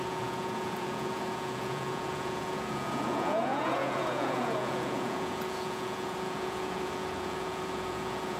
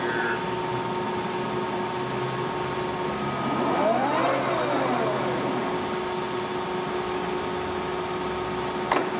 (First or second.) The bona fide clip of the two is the second